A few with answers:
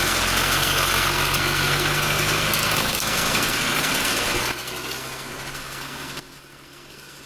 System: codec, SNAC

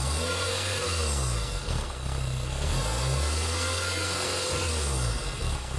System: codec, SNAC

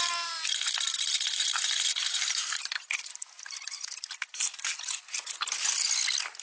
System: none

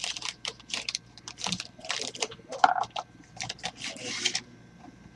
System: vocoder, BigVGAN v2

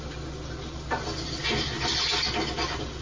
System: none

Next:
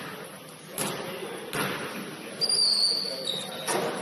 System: none